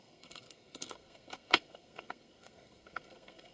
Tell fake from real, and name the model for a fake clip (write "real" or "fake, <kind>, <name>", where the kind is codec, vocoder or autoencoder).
fake, codec, SNAC